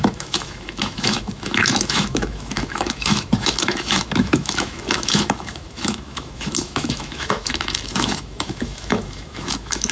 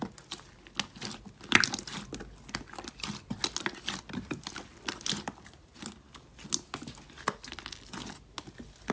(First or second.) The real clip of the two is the second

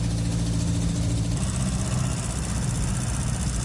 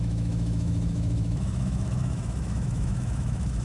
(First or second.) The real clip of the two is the first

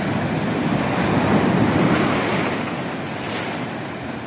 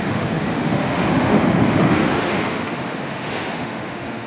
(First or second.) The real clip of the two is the first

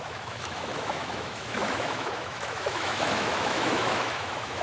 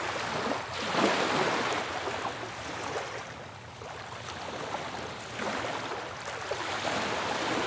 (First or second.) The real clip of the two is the second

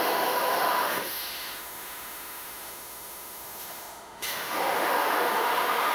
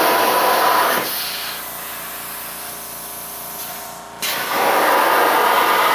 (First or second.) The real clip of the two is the second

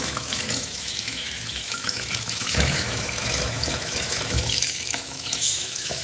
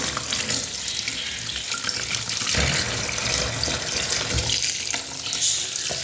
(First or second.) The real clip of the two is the second